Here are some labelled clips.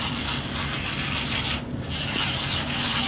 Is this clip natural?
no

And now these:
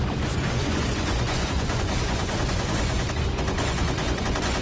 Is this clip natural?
no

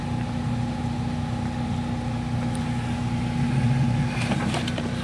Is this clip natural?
yes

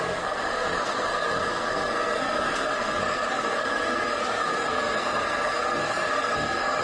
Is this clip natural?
no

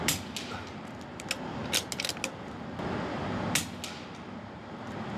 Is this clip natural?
yes